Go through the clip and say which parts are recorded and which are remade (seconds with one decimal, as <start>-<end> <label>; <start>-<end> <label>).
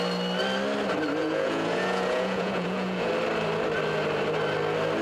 0.0-1.2 recorded; 1.2-3.1 remade; 3.1-5.0 recorded